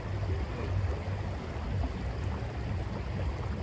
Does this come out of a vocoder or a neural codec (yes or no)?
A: no